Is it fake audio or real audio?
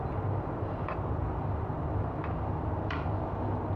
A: fake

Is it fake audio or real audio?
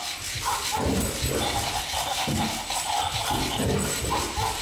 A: real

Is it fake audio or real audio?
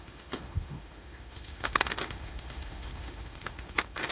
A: fake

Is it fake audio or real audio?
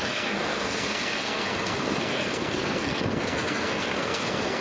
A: fake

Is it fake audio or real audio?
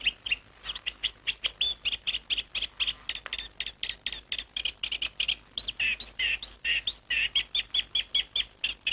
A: real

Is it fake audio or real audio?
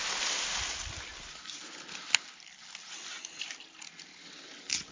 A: real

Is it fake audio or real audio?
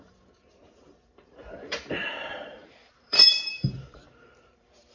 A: fake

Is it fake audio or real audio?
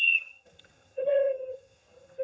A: fake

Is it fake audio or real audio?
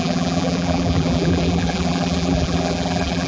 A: fake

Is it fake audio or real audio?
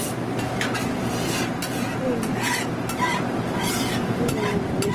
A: real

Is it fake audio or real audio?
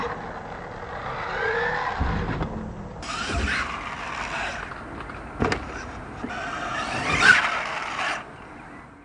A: real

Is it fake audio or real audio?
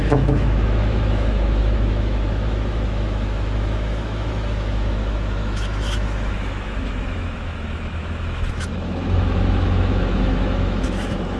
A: fake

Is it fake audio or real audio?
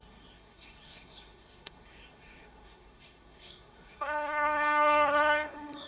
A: fake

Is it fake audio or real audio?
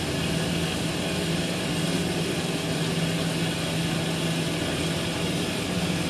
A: real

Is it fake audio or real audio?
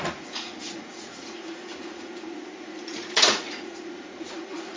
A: fake